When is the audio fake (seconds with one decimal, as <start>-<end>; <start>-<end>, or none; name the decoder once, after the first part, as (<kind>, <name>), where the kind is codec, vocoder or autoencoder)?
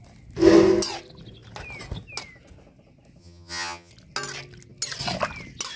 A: 3.2-3.9 (vocoder, HiFi-GAN)